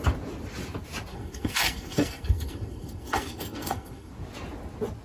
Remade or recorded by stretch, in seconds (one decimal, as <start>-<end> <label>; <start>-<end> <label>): 0.0-1.1 recorded; 1.1-4.1 remade; 4.1-5.0 recorded